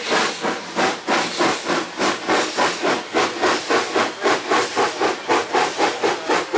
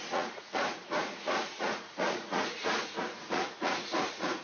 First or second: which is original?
first